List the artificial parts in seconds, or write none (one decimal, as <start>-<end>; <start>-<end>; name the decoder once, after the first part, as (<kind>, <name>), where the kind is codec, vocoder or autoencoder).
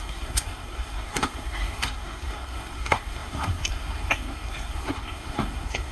0.0-5.9 (codec, SNAC)